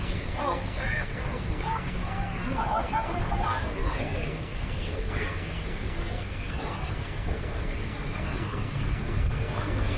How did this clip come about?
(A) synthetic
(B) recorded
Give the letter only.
A